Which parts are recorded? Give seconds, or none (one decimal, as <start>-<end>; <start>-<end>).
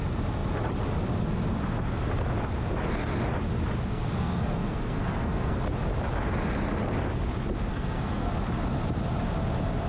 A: 0.0-3.9; 5.6-7.7; 8.3-9.9